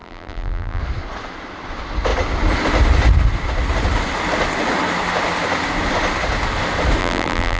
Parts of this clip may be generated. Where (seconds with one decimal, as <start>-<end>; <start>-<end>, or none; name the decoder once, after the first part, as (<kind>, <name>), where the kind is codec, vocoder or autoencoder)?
0.0-0.8 (vocoder, BigVGAN v2); 7.0-7.6